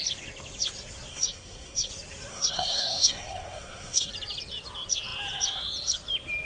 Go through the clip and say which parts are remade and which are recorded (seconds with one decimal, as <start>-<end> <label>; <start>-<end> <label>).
0.0-1.1 recorded; 1.1-1.9 remade; 1.9-2.3 recorded; 2.3-4.1 remade; 4.1-6.5 recorded